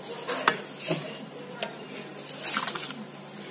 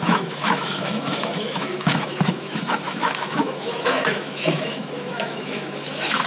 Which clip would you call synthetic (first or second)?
second